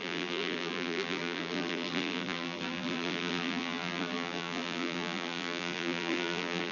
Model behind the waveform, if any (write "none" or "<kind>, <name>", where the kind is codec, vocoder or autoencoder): vocoder, BigVGAN v2